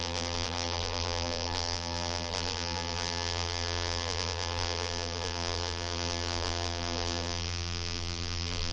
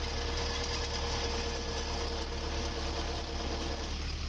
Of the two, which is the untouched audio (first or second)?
second